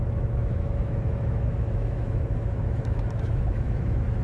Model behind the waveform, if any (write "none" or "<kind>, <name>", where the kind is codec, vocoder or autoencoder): autoencoder, DAC-VAE